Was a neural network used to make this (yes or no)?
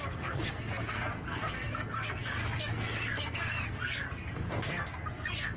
yes